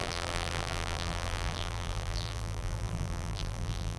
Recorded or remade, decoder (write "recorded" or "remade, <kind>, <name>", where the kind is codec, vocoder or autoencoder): remade, vocoder, BigVGAN v2